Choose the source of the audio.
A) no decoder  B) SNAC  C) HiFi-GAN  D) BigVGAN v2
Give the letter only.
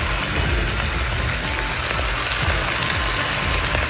A